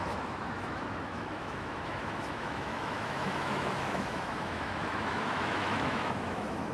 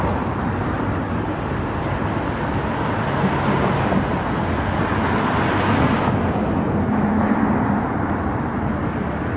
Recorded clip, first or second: second